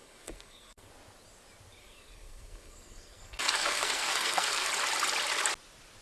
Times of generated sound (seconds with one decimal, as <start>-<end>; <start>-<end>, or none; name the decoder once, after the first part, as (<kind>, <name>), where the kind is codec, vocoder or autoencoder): 0.0-0.9 (codec, SNAC); 1.8-4.7